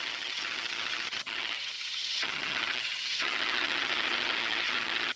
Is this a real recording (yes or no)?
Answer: no